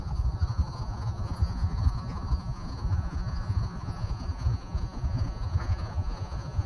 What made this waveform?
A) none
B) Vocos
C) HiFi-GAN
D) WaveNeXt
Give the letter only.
B